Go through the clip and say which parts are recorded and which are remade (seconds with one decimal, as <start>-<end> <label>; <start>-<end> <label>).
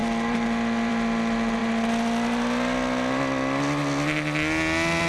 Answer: 0.0-5.1 recorded